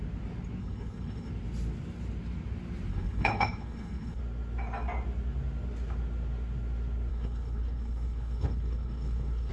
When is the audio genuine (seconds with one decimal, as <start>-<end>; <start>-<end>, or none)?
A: 0.0-0.6; 1.3-2.9; 4.2-7.1